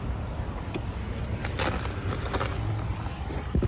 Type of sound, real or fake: real